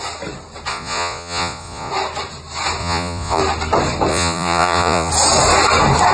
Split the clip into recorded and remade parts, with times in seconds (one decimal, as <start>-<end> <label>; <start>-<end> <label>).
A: 0.0-0.7 recorded; 0.7-1.9 remade; 1.9-2.8 recorded; 2.8-3.4 remade; 3.4-4.1 recorded; 4.1-5.1 remade; 5.1-6.1 recorded